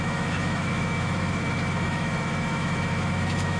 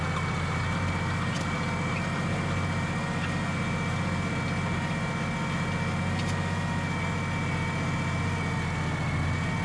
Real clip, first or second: second